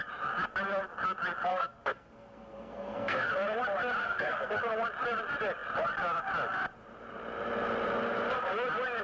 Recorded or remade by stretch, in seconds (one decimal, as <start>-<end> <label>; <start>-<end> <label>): 0.0-1.5 recorded; 1.5-3.3 remade; 3.3-4.0 recorded; 4.0-4.5 remade; 4.5-9.0 recorded